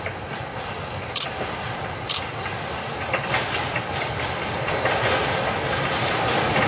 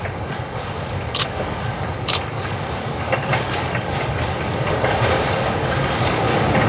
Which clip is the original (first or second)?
first